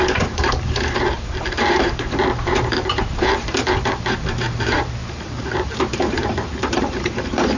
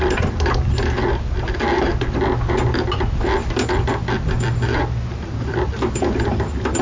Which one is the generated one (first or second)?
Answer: first